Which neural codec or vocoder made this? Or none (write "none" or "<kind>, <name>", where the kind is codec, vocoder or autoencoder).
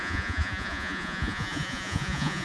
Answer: vocoder, Vocos